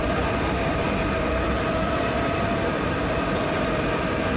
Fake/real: fake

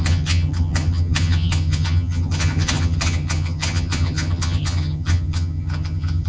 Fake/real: fake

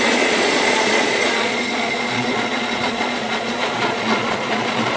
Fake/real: fake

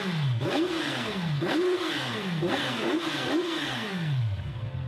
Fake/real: fake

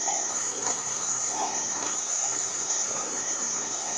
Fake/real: fake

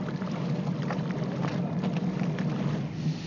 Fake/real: real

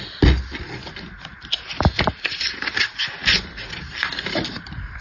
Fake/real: real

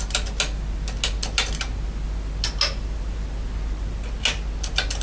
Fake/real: real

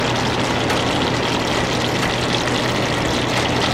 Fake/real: real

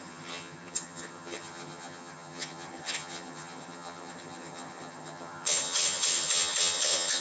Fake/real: fake